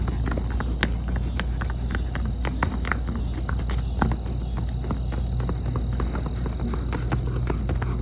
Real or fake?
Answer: real